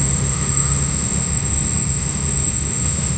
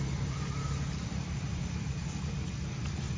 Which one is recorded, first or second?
second